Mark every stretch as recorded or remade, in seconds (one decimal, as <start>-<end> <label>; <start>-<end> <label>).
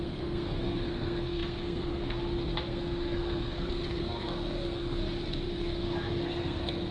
0.0-5.0 remade; 5.0-5.5 recorded; 5.5-6.9 remade